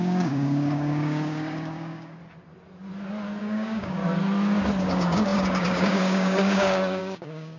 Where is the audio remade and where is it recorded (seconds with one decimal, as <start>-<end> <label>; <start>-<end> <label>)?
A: 0.0-2.2 remade; 2.2-3.4 recorded; 3.4-4.0 remade; 4.0-4.8 recorded; 4.8-7.6 remade